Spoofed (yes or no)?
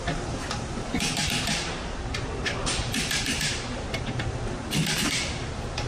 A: yes